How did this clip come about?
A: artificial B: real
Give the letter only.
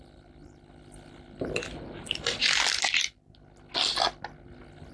B